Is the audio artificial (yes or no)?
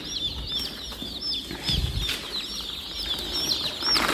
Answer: no